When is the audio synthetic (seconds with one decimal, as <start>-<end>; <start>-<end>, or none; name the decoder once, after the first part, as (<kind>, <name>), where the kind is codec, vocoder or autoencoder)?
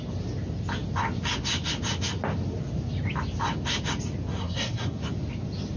4.3-5.0 (codec, SNAC)